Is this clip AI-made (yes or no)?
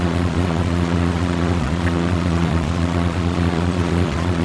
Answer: yes